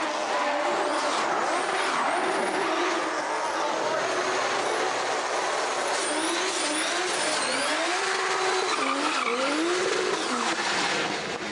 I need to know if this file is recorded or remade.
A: recorded